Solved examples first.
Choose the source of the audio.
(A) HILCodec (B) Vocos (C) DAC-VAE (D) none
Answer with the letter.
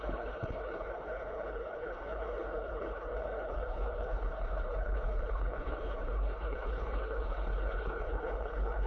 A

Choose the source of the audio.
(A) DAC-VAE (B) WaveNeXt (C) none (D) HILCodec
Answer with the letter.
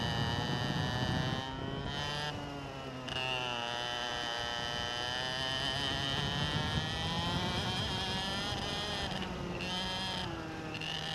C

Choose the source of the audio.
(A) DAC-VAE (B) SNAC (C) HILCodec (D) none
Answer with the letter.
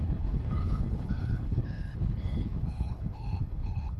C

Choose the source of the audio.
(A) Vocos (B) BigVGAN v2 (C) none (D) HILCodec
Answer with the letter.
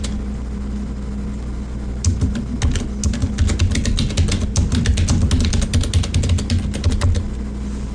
C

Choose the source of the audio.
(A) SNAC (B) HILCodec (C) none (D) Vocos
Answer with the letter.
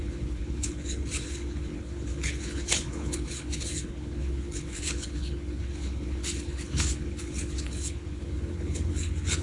B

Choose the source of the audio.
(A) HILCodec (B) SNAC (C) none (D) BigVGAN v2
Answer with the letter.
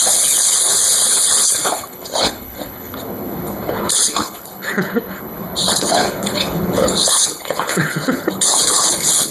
A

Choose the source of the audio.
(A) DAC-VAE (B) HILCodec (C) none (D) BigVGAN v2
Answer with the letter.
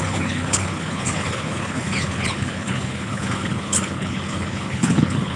B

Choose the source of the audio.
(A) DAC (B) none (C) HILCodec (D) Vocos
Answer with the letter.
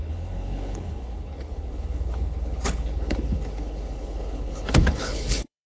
C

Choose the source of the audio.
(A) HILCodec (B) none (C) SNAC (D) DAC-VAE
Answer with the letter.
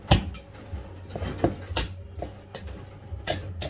B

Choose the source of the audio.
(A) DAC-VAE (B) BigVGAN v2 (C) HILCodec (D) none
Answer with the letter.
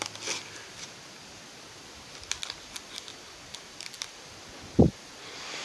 D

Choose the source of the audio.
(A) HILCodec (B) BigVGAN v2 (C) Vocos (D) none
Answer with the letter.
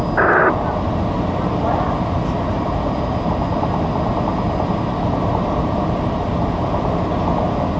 D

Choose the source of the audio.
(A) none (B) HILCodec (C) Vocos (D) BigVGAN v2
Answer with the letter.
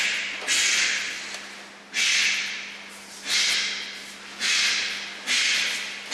A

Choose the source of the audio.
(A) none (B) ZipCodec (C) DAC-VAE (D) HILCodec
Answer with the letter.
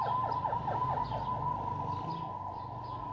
A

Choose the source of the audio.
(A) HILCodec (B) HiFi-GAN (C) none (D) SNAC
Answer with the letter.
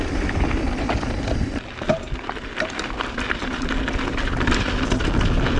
C